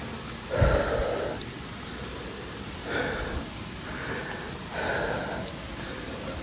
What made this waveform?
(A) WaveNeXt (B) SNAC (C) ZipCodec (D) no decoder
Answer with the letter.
D